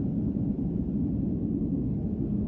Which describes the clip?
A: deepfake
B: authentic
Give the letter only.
B